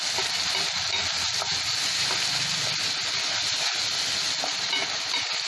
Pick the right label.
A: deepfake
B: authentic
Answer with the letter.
B